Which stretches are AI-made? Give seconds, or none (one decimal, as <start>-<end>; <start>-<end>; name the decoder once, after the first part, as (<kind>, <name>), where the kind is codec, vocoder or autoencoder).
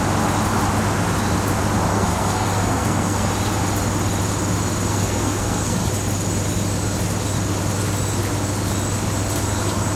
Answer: 1.9-3.3 (codec, SNAC); 4.9-5.9